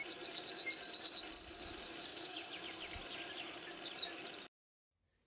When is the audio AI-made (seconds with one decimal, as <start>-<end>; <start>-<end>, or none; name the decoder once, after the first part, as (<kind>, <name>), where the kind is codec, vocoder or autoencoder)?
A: 2.1-2.6 (autoencoder, DAC-VAE)